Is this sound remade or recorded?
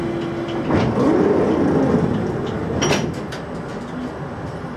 recorded